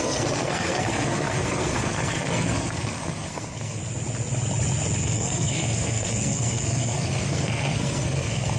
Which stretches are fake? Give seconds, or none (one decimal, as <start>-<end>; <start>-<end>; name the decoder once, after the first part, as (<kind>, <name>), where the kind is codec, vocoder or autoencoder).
0.0-3.8 (codec, SNAC); 5.0-8.6